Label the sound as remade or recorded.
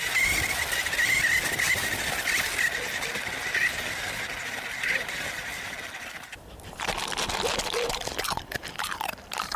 remade